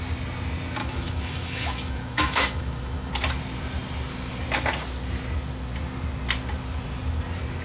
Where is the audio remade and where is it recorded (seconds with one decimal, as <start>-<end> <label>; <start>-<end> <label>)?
0.0-0.8 recorded; 0.8-3.1 remade; 3.1-7.6 recorded

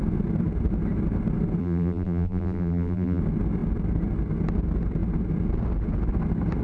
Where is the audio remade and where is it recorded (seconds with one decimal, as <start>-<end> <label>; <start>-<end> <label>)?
0.0-1.6 recorded; 1.6-3.2 remade; 3.2-6.6 recorded

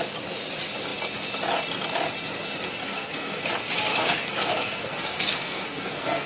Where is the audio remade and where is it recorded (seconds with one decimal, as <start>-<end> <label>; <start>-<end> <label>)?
0.0-2.8 recorded; 2.8-3.4 remade; 3.4-3.9 recorded; 3.9-6.3 remade

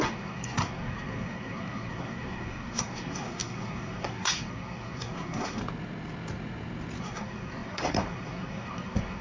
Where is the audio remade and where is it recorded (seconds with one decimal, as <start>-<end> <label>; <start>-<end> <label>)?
0.0-5.6 remade; 5.6-7.0 recorded; 7.0-9.2 remade

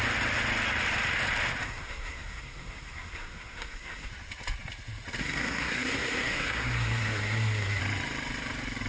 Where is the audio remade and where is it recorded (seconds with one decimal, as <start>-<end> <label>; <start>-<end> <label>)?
0.0-1.6 recorded; 1.6-4.1 remade; 4.1-5.2 recorded; 5.2-7.8 remade; 7.8-8.9 recorded

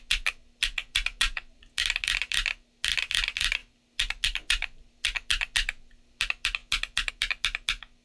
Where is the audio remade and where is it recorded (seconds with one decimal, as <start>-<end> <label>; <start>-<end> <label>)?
0.0-8.0 recorded

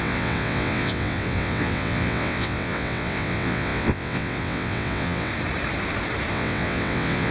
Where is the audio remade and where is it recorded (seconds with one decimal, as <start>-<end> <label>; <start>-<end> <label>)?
0.0-5.3 remade; 5.3-6.3 recorded; 6.3-7.3 remade